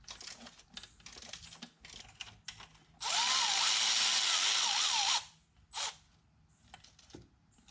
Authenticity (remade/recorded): recorded